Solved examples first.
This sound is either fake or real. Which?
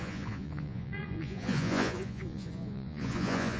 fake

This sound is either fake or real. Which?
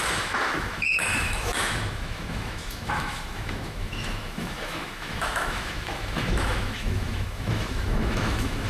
fake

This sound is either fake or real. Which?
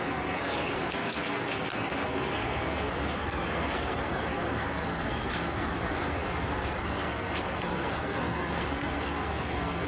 fake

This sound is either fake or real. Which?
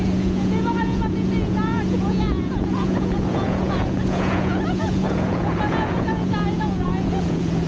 fake